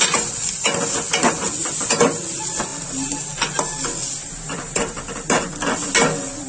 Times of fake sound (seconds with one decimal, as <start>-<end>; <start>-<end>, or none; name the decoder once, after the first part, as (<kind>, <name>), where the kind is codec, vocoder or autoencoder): 4.2-5.1 (vocoder, BigVGAN v2)